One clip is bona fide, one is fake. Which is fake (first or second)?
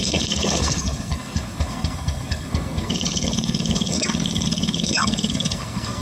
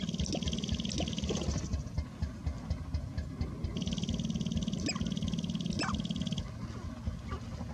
first